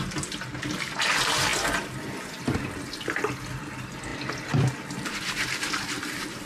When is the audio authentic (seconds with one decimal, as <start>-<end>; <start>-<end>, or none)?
0.0-6.4